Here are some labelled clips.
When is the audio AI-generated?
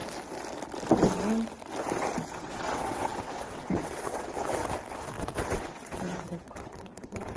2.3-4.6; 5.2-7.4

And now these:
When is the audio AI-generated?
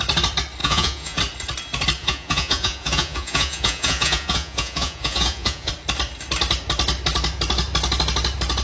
0.6-1.2; 2.0-5.7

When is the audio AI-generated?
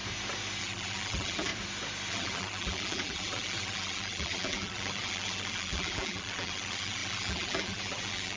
0.6-1.5; 2.1-8.4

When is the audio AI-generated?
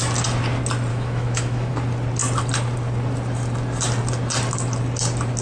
0.9-1.7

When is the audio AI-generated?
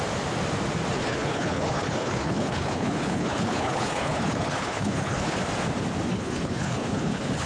1.0-5.4; 6.1-7.5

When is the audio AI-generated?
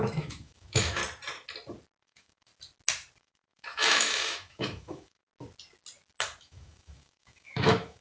0.0-1.0; 2.0-2.5; 3.2-5.3; 6.4-8.0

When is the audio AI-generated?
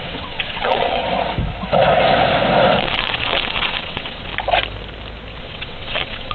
0.0-1.0; 2.8-4.3; 5.4-6.3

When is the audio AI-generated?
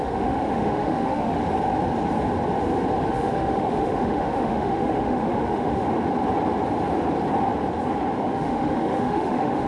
0.0-1.4; 3.1-5.8; 8.2-9.7